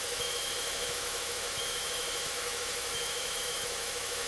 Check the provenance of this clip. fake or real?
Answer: fake